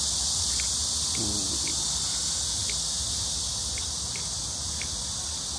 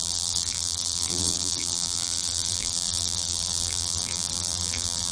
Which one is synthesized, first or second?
second